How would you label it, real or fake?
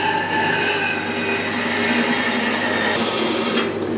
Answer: real